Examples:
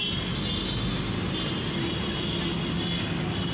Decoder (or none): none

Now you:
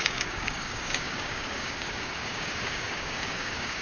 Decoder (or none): codec, DAC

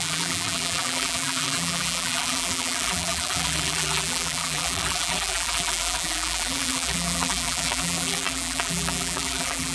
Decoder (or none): vocoder, BigVGAN v2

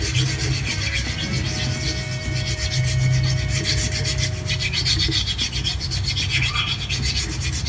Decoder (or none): none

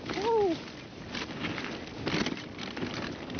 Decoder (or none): none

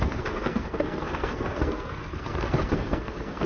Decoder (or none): codec, SNAC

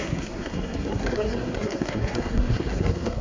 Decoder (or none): codec, SNAC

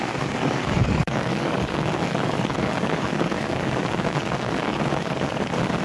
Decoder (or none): codec, DAC